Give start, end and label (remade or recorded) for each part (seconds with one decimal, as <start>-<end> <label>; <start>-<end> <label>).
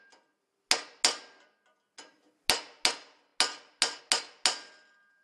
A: 0.0-5.2 recorded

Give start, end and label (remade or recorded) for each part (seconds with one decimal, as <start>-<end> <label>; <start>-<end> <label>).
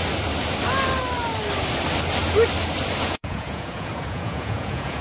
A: 0.0-3.0 recorded; 3.0-5.0 remade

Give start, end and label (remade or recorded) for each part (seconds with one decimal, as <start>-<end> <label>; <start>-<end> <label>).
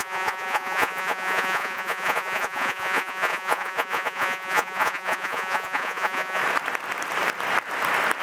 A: 0.0-6.4 remade; 6.4-8.2 recorded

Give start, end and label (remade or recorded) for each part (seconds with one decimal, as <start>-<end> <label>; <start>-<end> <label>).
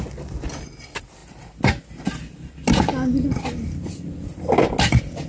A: 0.0-5.3 recorded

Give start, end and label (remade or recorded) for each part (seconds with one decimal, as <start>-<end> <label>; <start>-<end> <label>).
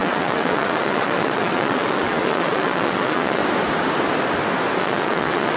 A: 0.0-3.4 remade; 3.4-4.8 recorded; 4.8-5.6 remade